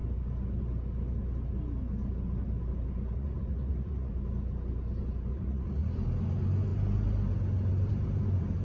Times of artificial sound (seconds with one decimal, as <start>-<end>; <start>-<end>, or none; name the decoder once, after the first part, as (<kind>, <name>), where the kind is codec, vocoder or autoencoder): 3.1-4.1 (vocoder, Vocos); 5.3-5.9